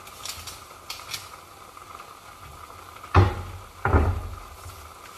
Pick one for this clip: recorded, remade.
recorded